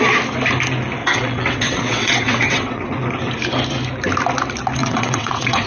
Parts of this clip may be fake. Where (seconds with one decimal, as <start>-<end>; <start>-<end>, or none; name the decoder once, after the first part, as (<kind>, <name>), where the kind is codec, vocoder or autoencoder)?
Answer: 1.0-2.9 (vocoder, WaveNeXt); 4.8-5.7